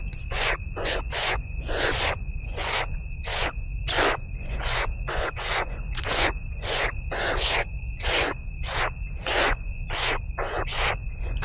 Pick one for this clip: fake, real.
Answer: fake